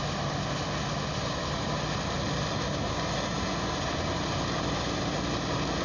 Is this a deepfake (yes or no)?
no